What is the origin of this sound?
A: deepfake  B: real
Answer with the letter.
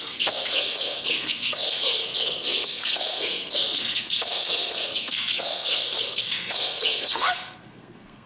A